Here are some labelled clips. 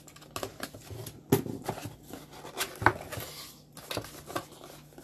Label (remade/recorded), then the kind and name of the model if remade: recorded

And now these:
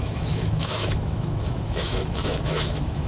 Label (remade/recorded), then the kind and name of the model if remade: remade, autoencoder, DAC-VAE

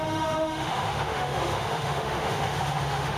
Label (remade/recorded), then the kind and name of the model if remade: remade, autoencoder, DAC-VAE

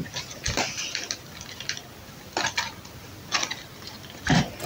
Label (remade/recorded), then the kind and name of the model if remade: recorded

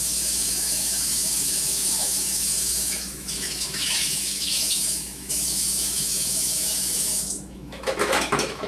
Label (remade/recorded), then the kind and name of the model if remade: remade, autoencoder, DAC-VAE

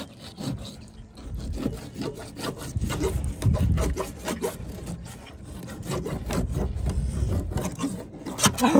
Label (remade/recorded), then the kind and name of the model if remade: recorded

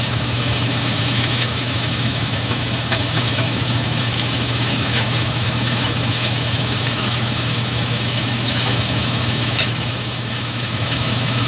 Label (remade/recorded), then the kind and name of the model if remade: remade, autoencoder, DAC-VAE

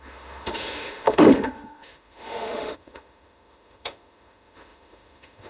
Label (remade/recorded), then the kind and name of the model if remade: remade, autoencoder, DAC-VAE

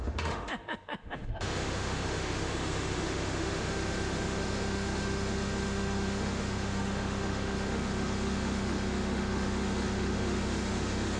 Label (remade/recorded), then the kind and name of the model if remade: remade, autoencoder, DAC-VAE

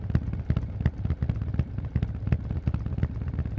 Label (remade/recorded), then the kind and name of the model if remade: recorded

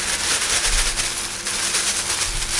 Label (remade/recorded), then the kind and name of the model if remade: recorded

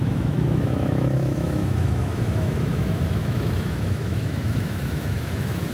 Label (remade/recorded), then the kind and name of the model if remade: remade, autoencoder, DAC-VAE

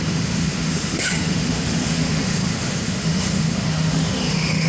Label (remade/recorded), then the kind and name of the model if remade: remade, autoencoder, DAC-VAE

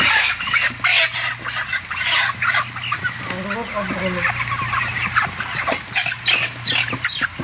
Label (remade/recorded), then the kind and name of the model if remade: recorded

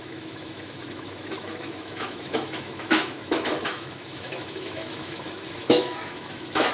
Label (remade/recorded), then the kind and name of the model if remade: remade, autoencoder, DAC-VAE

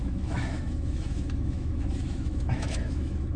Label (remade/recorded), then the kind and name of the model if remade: remade, autoencoder, DAC-VAE